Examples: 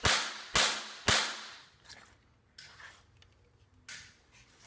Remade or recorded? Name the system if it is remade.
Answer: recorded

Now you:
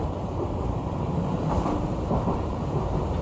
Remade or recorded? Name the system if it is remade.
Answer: remade, vocoder, BigVGAN v2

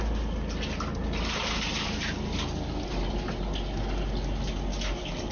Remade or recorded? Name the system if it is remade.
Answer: recorded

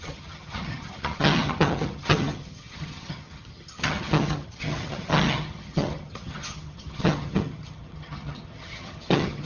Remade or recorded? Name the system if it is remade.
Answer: remade, vocoder, HiFi-GAN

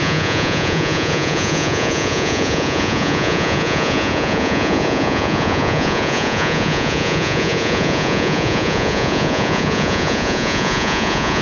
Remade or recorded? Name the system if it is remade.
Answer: remade, vocoder, Vocos